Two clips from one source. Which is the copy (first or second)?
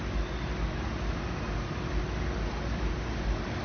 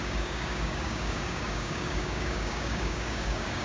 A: second